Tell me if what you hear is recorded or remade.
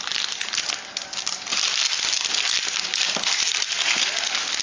recorded